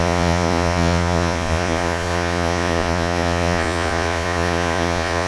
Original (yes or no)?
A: no